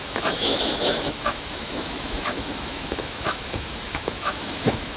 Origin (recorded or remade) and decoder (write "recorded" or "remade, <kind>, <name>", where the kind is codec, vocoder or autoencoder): remade, autoencoder, DAC-VAE